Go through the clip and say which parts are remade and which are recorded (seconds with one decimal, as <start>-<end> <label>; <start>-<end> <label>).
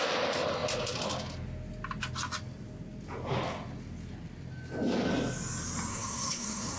0.0-5.9 recorded; 5.9-6.8 remade